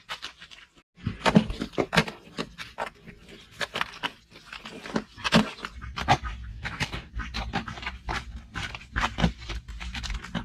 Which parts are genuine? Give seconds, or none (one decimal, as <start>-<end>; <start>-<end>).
0.0-6.5; 7.1-10.4